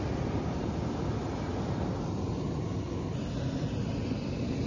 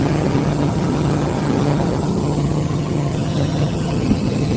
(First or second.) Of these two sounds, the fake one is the second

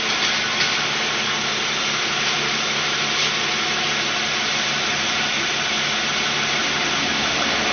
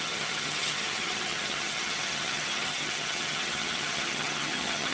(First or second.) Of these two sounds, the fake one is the second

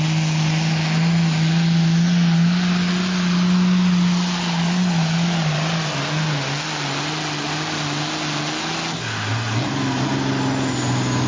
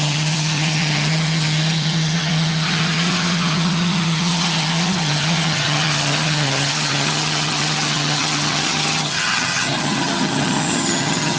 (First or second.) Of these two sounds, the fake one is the second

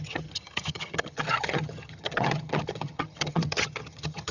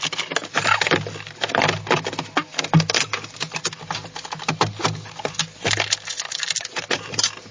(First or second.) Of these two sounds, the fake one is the first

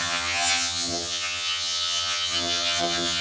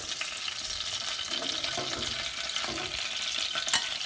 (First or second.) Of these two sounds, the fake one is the first